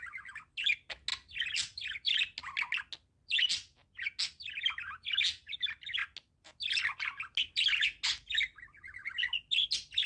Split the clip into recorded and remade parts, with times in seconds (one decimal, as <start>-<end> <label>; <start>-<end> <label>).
0.0-10.1 recorded